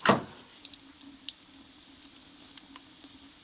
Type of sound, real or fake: real